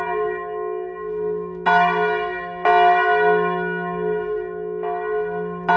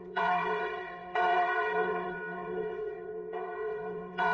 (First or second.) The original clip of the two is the first